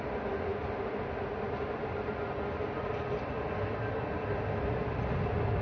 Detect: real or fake real